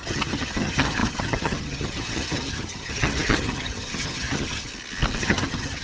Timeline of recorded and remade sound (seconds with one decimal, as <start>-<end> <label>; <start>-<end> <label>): 0.0-4.7 remade; 4.7-5.2 recorded; 5.2-5.8 remade